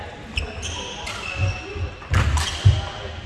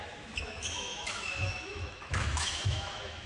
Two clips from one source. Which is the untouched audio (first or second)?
first